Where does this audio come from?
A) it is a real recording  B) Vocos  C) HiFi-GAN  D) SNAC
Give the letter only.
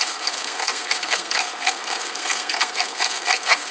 D